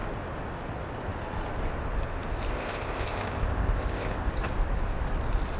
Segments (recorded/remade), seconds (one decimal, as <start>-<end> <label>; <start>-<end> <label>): 0.0-2.5 recorded; 2.5-4.3 remade; 4.3-5.6 recorded